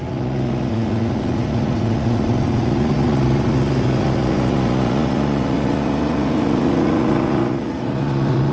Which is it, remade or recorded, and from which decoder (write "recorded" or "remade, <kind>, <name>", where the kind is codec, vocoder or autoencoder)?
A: remade, vocoder, Vocos